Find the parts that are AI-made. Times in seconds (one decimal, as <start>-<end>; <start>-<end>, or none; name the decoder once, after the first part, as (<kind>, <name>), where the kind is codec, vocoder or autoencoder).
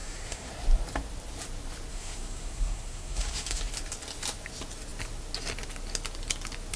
0.0-0.5 (codec, SNAC); 1.9-3.6